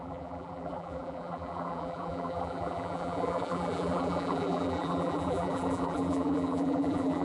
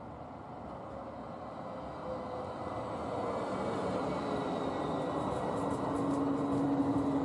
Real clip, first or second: second